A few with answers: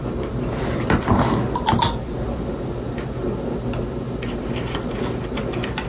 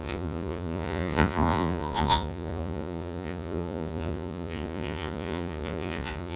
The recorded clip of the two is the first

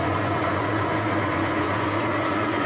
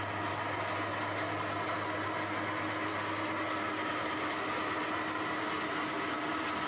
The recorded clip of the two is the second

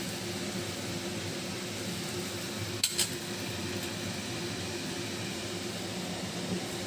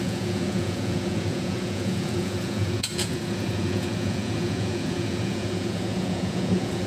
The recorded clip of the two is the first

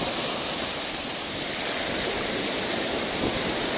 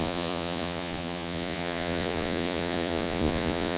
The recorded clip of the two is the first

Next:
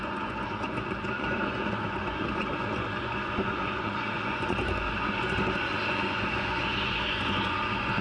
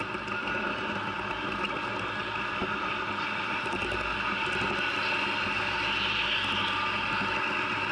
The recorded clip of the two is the second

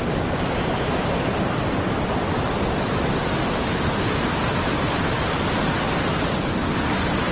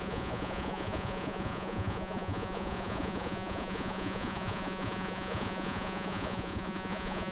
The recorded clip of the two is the first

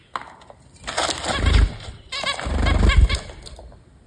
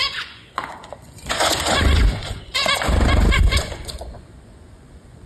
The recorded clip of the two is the first